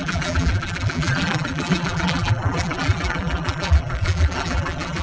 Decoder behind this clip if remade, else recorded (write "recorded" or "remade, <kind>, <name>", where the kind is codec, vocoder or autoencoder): remade, vocoder, BigVGAN v2